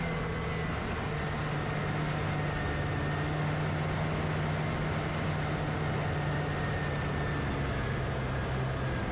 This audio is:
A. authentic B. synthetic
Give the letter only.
A